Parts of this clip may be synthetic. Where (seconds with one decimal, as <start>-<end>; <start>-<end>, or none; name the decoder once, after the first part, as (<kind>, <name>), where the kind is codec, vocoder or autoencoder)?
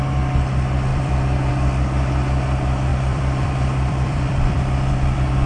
0.9-1.5 (vocoder, BigVGAN v2); 2.9-4.9